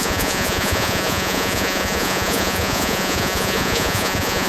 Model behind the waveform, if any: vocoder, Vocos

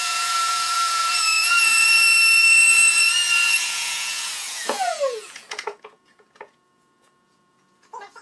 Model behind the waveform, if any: vocoder, Vocos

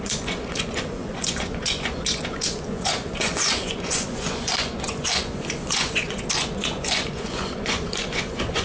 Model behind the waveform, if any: vocoder, Vocos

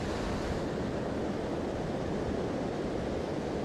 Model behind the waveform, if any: none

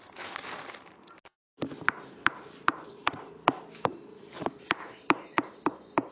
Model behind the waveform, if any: none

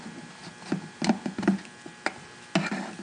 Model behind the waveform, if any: none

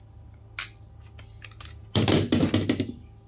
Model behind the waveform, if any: none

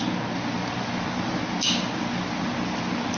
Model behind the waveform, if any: none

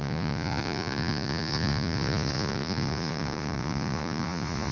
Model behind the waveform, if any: vocoder, Vocos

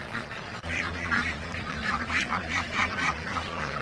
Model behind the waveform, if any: vocoder, Vocos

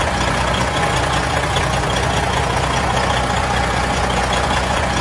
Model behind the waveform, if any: vocoder, Vocos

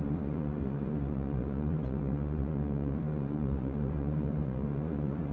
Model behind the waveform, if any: vocoder, Vocos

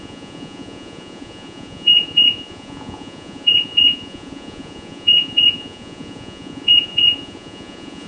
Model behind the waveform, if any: vocoder, Vocos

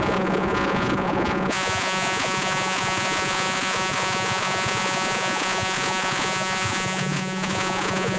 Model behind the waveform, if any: vocoder, Vocos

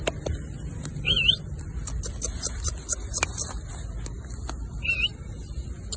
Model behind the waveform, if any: none